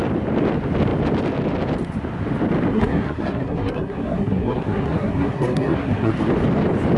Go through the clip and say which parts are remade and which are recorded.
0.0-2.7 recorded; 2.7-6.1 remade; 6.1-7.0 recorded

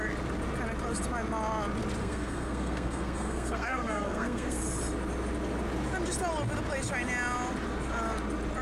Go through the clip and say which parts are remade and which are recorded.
0.0-2.0 recorded; 2.0-4.6 remade; 4.6-8.6 recorded

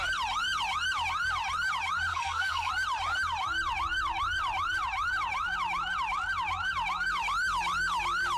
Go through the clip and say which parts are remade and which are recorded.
0.0-2.1 recorded; 2.1-2.7 remade; 2.7-8.4 recorded

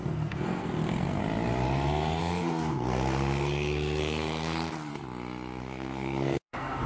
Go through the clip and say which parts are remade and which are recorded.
0.0-1.2 remade; 1.2-2.2 recorded; 2.2-4.9 remade; 4.9-5.6 recorded; 5.6-6.9 remade